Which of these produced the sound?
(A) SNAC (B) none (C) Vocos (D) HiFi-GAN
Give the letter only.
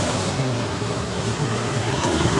A